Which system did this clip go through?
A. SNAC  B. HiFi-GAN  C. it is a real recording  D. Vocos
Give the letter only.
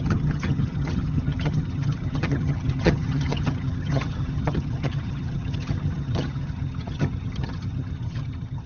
B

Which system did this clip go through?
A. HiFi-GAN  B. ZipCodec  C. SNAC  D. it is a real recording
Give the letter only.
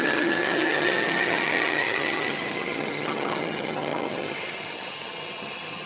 A